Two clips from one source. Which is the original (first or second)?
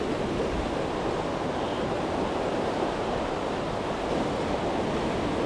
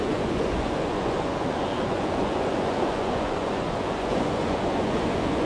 first